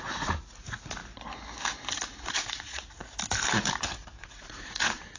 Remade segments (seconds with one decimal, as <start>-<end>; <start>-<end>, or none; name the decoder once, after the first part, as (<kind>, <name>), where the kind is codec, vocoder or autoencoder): 0.0-1.0 (vocoder, Vocos); 2.2-3.0; 4.2-5.2